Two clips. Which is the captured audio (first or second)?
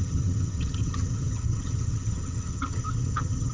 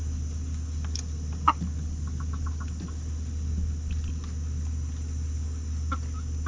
second